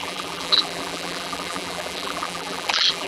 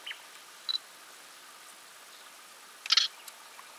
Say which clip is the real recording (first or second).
second